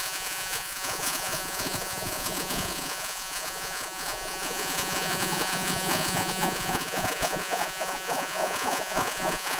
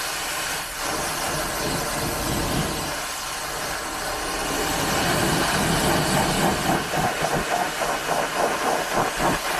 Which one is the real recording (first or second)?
second